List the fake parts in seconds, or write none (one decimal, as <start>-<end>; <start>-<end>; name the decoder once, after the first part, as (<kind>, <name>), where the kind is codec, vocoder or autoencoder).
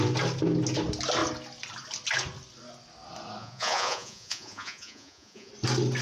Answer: 3.4-5.5 (vocoder, Vocos)